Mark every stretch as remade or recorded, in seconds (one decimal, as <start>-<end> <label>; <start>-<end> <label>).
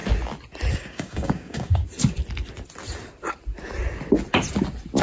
0.0-0.7 recorded; 0.7-1.8 remade; 1.8-5.0 recorded